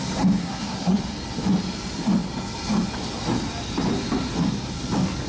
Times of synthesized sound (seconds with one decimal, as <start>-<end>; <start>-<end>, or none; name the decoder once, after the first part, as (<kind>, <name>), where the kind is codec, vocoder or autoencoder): 0.4-1.0 (codec, SNAC)